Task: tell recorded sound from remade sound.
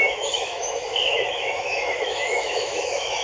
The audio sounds remade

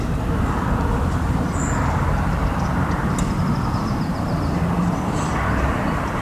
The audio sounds recorded